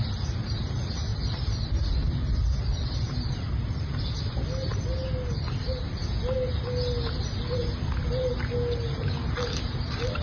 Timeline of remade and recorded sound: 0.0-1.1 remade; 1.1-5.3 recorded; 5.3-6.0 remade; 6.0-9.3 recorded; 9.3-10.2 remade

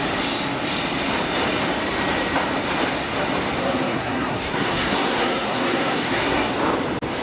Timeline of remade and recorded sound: 0.0-3.6 recorded; 3.6-6.5 remade; 6.5-7.2 recorded

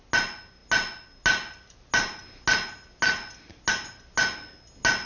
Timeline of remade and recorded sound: 0.0-5.1 recorded